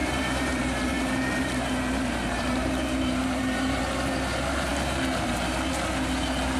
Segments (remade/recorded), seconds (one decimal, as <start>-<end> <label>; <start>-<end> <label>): 0.0-3.8 remade; 3.8-6.6 recorded